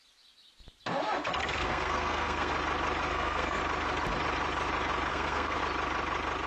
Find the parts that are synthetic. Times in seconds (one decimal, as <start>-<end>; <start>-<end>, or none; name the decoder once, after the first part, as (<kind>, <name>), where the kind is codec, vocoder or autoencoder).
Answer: 1.4-2.5 (codec, SNAC); 3.1-3.6; 5.1-5.6

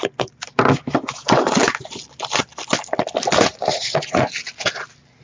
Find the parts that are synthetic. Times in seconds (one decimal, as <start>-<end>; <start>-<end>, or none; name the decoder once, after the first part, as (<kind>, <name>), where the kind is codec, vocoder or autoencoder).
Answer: 3.5-4.3 (vocoder, Vocos)

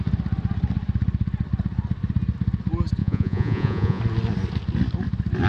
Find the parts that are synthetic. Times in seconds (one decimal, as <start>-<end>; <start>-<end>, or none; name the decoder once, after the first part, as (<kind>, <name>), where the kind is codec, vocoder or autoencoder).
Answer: 3.0-4.0 (vocoder, Vocos)

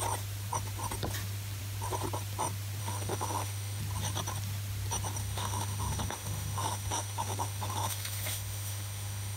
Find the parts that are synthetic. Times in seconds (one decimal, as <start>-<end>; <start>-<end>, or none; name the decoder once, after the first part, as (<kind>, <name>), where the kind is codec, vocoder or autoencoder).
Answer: 2.8-3.8 (autoencoder, DAC-VAE); 5.2-9.4